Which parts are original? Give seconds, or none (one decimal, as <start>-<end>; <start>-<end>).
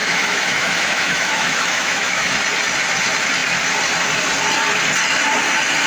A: 2.3-5.9